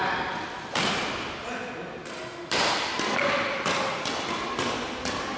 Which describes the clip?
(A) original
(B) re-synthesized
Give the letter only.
A